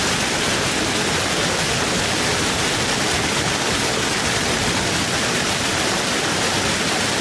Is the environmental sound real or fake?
real